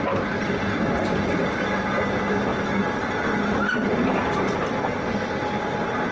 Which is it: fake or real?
real